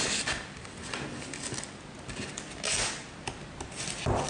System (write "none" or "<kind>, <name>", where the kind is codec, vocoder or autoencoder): none